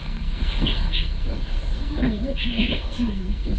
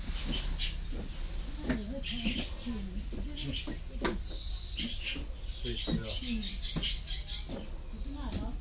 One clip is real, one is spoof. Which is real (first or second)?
second